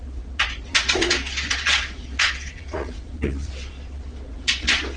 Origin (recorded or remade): remade